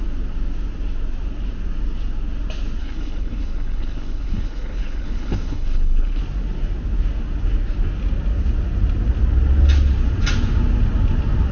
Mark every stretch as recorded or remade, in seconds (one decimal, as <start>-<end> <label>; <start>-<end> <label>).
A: 0.0-2.8 recorded; 2.8-6.2 remade; 6.2-11.5 recorded